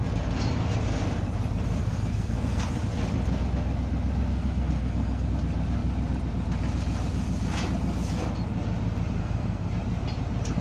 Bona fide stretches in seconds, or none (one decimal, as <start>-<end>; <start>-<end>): 0.0-1.8; 2.7-4.3; 5.3-9.2; 9.7-10.6